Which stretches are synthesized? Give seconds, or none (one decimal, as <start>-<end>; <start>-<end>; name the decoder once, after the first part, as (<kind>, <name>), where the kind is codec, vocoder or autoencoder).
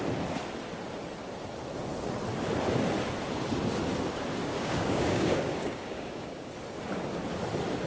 4.4-6.5 (codec, DAC)